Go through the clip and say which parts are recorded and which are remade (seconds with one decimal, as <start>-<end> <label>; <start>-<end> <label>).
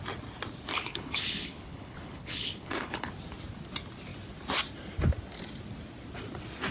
0.0-0.7 recorded; 0.7-3.1 remade; 3.1-6.7 recorded